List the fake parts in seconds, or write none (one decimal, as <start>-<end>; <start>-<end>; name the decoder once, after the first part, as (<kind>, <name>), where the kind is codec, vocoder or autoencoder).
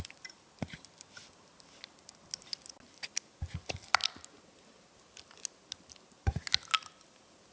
none